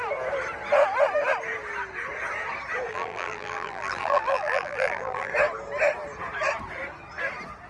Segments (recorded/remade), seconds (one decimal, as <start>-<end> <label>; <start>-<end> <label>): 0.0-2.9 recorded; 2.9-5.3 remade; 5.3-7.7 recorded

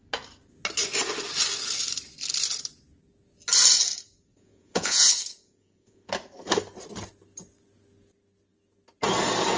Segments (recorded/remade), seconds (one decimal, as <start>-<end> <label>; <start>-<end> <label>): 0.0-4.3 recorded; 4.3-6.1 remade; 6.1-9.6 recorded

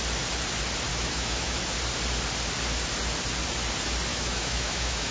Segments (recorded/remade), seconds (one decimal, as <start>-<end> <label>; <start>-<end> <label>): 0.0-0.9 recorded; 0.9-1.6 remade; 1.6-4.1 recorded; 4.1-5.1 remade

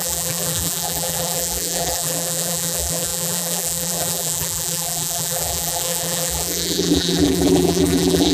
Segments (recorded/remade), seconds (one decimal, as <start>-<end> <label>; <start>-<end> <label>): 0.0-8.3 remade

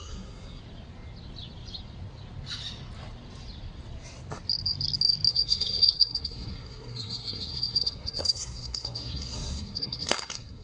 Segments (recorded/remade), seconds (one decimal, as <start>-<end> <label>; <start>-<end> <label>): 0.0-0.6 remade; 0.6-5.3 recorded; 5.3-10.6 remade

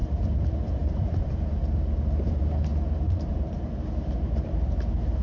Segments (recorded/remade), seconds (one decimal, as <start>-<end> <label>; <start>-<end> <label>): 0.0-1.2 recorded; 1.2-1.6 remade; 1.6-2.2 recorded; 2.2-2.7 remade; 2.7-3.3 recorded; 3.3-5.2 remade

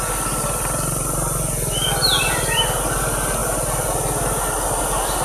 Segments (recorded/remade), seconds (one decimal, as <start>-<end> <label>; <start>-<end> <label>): 0.0-5.2 recorded

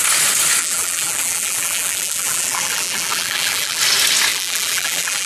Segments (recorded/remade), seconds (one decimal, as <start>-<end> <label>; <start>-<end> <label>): 0.0-0.6 recorded; 0.6-3.8 remade; 3.8-4.3 recorded; 4.3-5.3 remade